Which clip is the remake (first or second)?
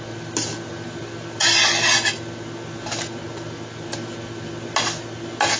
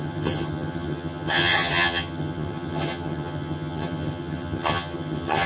second